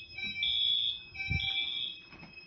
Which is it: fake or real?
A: real